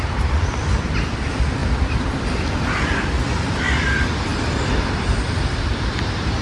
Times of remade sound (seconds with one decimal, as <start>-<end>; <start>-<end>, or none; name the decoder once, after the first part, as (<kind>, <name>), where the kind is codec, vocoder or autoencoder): 0.0-1.6 (vocoder, BigVGAN v2); 2.1-6.4